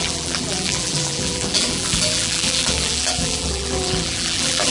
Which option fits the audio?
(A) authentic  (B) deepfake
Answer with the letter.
B